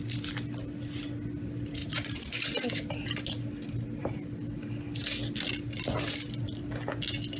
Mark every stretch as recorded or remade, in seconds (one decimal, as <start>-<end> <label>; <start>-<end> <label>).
0.0-7.4 recorded

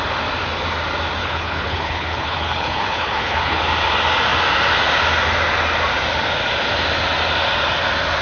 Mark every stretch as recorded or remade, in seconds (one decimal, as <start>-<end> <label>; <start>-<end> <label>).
0.0-1.2 recorded; 1.2-3.6 remade; 3.6-8.2 recorded

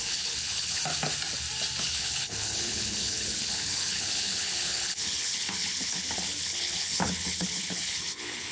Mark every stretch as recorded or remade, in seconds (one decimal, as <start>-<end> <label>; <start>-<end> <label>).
0.0-0.8 remade; 0.8-1.8 recorded; 1.8-8.5 remade

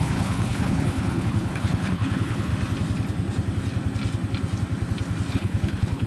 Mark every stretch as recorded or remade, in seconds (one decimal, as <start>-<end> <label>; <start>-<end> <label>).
0.0-2.5 remade; 2.5-5.3 recorded; 5.3-6.1 remade

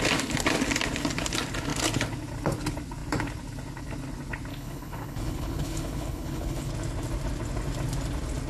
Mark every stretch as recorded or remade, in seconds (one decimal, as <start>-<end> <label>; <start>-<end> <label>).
0.0-4.5 recorded; 4.5-6.7 remade; 6.7-8.5 recorded

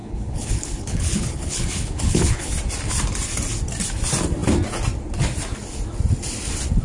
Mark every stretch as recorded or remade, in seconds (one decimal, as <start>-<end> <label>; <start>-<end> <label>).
0.0-2.5 remade; 2.5-6.8 recorded